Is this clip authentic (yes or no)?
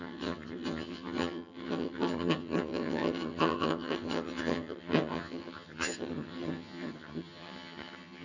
no